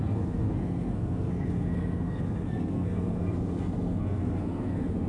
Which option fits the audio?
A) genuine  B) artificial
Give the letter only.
B